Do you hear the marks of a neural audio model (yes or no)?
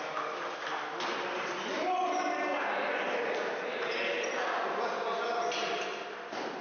no